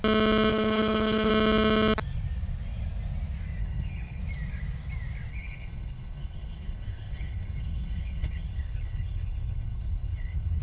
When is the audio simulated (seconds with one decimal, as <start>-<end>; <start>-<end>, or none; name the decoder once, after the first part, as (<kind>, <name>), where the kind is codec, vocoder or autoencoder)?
0.5-1.3 (codec, HILCodec); 3.6-4.2; 5.3-10.6